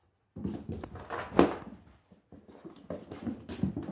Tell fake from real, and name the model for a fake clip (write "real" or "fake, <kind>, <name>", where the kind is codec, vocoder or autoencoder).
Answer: real